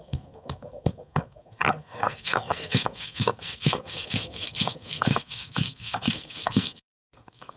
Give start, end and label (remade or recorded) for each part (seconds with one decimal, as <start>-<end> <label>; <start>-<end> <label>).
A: 0.0-7.6 remade